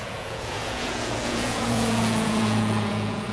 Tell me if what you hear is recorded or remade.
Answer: remade